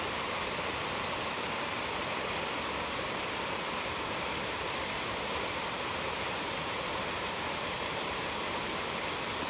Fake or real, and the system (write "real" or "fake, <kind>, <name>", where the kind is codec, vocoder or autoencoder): fake, vocoder, BigVGAN v2